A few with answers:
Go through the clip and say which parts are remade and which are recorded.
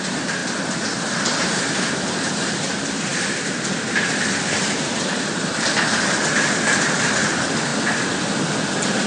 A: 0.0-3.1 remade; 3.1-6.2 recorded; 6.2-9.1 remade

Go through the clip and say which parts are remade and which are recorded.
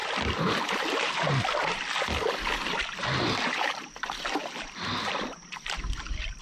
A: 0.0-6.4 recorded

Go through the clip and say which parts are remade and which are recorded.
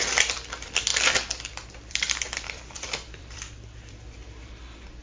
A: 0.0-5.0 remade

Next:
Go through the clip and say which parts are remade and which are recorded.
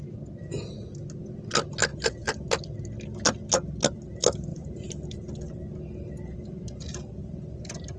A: 0.0-1.9 recorded; 1.9-2.5 remade; 2.5-4.5 recorded; 4.5-5.2 remade; 5.2-7.2 recorded; 7.2-8.0 remade